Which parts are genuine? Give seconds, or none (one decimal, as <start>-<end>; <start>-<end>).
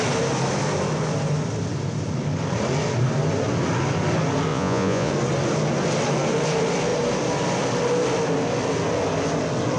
0.0-4.5; 5.1-9.8